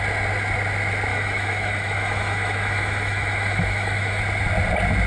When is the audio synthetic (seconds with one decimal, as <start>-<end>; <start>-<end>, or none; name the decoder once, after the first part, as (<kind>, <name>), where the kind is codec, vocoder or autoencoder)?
1.1-4.2 (autoencoder, DAC-VAE)